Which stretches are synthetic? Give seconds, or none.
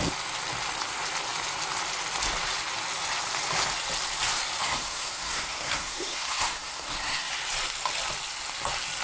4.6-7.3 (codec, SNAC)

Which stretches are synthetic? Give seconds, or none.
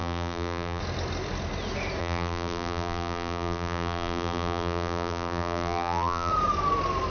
0.0-0.8 (vocoder, BigVGAN v2); 2.0-6.3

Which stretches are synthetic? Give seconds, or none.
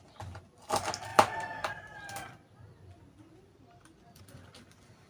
1.1-4.2 (vocoder, BigVGAN v2)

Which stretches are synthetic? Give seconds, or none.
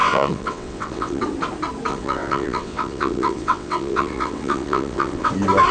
0.0-1.2 (vocoder, WaveNeXt); 1.9-5.3